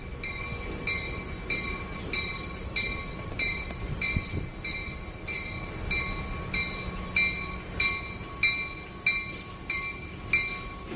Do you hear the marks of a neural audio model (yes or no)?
no